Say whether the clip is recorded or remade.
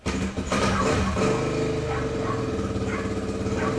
recorded